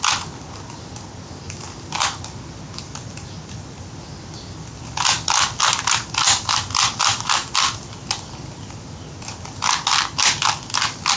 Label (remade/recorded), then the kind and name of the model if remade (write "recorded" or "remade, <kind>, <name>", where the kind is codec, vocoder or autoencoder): recorded